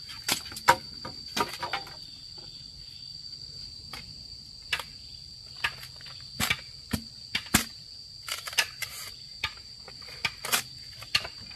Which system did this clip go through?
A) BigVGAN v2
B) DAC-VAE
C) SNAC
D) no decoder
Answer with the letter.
D